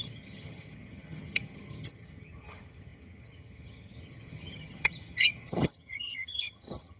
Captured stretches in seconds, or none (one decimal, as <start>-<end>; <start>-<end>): none